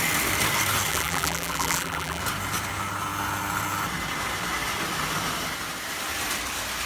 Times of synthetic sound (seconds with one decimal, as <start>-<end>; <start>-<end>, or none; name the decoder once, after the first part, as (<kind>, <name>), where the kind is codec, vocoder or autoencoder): 0.9-2.2 (vocoder, BigVGAN v2)